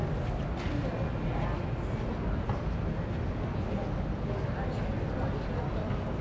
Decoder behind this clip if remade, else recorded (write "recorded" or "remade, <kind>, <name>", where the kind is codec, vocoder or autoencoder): recorded